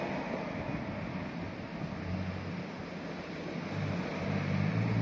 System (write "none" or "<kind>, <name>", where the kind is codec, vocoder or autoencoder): none